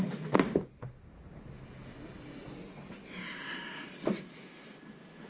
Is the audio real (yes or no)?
yes